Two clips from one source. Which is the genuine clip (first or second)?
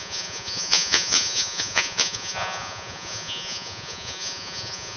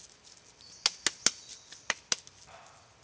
second